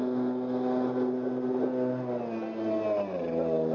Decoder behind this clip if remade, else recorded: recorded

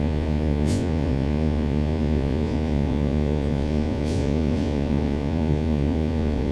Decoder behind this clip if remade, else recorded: remade, vocoder, Vocos